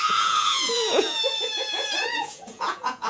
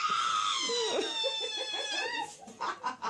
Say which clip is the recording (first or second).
second